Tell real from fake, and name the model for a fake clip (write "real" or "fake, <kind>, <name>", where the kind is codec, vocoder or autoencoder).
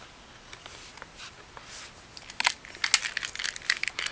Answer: real